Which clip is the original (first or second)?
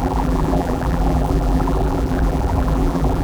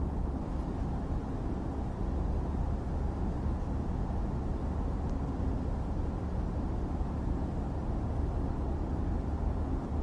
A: second